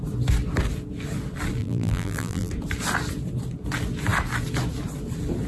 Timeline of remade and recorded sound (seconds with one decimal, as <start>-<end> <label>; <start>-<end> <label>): 0.0-1.6 recorded; 1.6-2.5 remade; 2.5-5.5 recorded